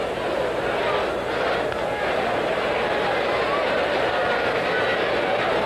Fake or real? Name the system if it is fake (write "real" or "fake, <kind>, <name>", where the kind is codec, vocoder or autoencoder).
real